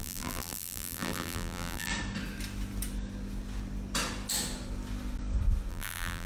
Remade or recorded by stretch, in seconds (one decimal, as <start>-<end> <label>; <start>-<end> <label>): 0.0-1.9 remade; 1.9-5.7 recorded; 5.7-6.3 remade